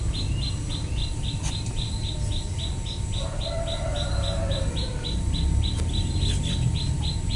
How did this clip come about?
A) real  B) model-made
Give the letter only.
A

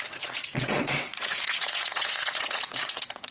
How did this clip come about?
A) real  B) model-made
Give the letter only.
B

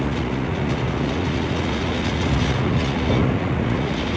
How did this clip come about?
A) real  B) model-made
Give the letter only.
B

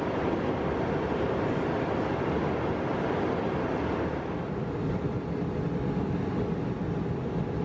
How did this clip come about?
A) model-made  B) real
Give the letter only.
B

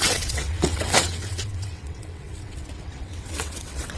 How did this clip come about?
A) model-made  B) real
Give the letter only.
A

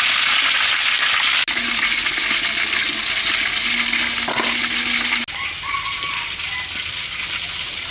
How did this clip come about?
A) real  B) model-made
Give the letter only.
A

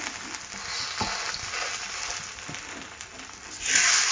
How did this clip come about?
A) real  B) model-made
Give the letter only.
A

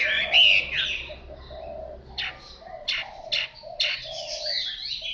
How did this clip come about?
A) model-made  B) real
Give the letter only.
B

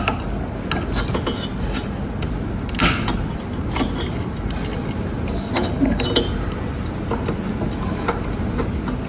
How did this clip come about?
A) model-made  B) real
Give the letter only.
B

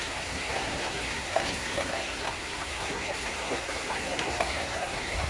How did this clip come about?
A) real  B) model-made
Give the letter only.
B